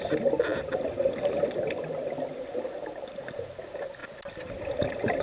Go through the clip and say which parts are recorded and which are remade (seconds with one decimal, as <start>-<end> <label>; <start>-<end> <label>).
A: 0.0-5.2 recorded